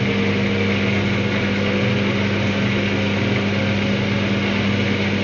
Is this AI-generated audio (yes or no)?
no